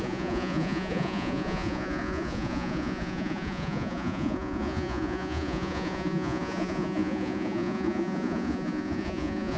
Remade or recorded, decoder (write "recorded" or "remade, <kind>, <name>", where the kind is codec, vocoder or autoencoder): remade, vocoder, Vocos